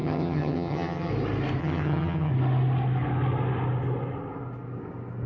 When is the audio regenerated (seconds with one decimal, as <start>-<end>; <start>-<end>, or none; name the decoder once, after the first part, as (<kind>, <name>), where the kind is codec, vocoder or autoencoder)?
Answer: 0.0-1.1 (vocoder, HiFi-GAN); 1.6-2.3

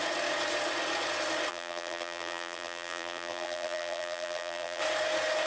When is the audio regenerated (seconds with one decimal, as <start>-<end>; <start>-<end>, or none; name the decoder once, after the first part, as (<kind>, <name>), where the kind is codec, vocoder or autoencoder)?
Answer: 1.5-4.8 (vocoder, BigVGAN v2)

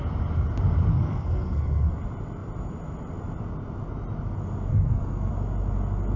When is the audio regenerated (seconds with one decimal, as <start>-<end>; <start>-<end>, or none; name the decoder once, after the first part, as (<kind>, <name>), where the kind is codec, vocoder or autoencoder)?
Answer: 0.9-1.9 (codec, SNAC); 4.7-5.3

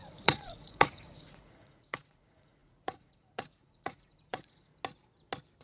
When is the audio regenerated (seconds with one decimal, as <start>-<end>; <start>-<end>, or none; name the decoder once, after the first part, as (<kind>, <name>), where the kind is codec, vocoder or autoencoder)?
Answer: 0.0-4.7 (vocoder, Vocos)

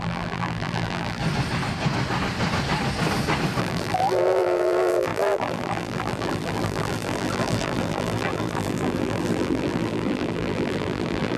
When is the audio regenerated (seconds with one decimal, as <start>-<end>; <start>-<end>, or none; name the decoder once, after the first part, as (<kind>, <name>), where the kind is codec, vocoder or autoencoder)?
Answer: 0.0-1.2 (vocoder, BigVGAN v2); 3.6-11.4

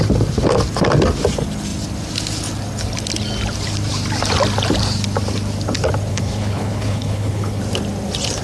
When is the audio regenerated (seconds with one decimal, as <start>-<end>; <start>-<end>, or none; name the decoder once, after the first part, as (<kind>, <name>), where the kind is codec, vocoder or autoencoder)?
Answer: 6.1-7.6 (codec, HILCodec)

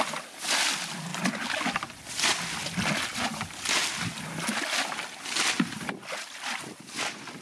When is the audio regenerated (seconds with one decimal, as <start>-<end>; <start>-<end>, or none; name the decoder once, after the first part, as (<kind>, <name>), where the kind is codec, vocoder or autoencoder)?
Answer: none